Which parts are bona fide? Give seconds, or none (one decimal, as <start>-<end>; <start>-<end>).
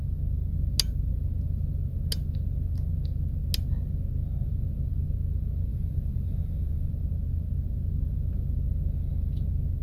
0.0-5.7; 6.9-9.8